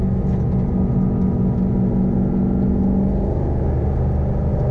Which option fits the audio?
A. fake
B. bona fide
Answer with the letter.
B